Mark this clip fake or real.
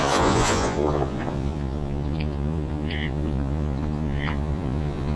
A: fake